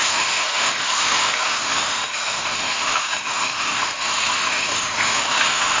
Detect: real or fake fake